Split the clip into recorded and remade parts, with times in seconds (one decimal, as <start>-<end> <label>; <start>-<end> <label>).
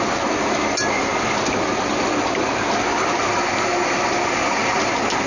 0.0-5.3 recorded